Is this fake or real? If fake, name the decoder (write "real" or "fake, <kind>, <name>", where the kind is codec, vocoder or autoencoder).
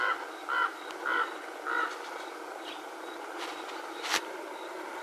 real